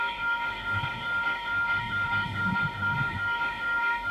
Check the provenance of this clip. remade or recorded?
remade